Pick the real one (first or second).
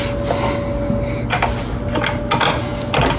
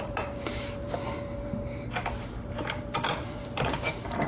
first